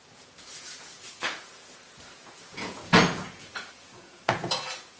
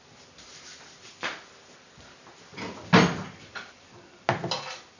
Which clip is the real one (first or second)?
second